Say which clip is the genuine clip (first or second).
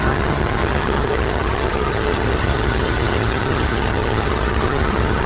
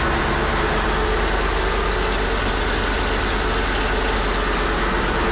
second